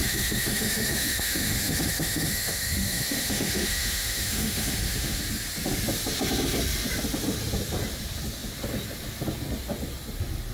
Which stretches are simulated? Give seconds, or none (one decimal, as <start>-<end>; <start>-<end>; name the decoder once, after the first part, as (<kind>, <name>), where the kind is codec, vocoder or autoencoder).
0.0-5.2 (autoencoder, DAC-VAE)